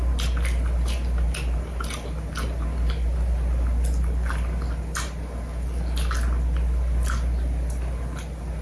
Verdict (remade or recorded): recorded